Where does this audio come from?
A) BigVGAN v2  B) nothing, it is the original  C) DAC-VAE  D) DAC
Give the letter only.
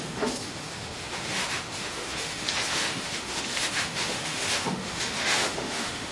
C